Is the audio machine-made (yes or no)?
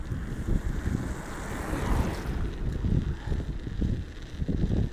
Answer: no